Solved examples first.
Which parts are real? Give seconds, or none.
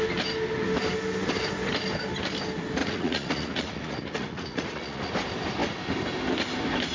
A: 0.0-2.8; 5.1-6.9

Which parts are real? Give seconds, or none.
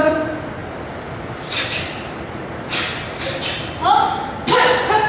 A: 0.0-0.6; 3.7-5.1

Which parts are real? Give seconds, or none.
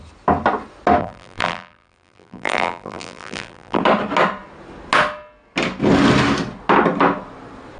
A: 0.0-1.0; 3.8-7.8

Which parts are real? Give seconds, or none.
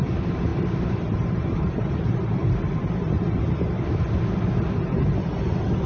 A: 0.0-0.5; 4.0-5.9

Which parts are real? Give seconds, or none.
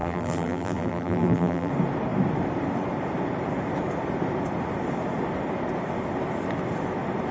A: 1.7-7.3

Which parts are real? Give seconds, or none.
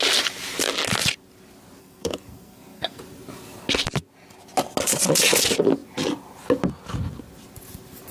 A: 0.0-1.8; 3.0-8.1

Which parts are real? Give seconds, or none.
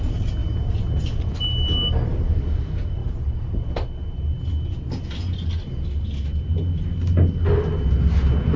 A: 0.0-0.4; 1.0-3.0; 3.6-8.6